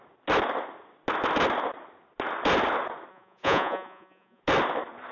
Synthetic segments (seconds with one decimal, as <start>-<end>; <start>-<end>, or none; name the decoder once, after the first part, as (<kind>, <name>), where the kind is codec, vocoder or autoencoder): 3.1-4.4 (vocoder, Vocos)